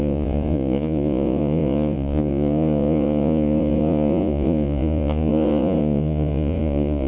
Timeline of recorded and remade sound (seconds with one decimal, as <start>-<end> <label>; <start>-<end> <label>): 0.0-7.1 remade